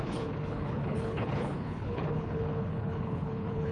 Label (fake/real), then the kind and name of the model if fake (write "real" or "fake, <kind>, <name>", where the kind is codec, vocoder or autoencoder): fake, codec, HILCodec